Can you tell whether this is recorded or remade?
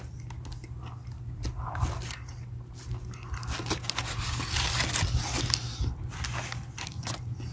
recorded